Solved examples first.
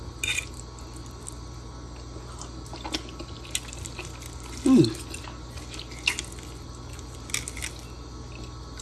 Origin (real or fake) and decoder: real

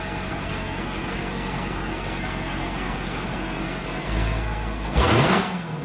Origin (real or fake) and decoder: fake, codec, SNAC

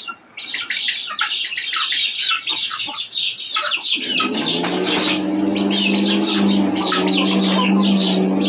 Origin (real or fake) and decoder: real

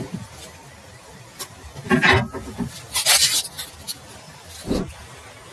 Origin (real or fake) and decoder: real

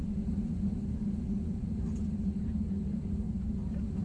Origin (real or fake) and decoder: fake, vocoder, BigVGAN v2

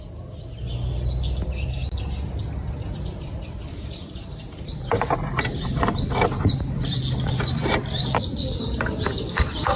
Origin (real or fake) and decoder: real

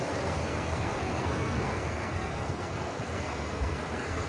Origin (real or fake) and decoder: fake, codec, SNAC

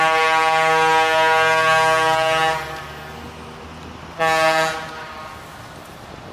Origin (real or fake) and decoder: real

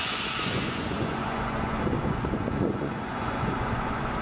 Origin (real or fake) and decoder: fake, vocoder, Vocos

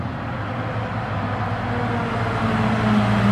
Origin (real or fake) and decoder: real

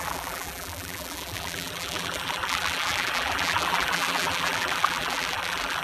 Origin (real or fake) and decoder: fake, vocoder, BigVGAN v2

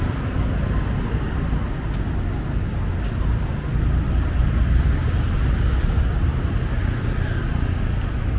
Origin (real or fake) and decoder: real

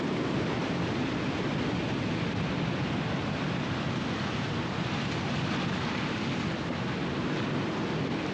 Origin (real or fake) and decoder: real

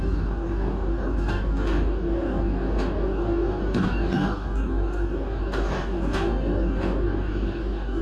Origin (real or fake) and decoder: fake, codec, DAC